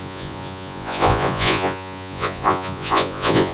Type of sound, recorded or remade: remade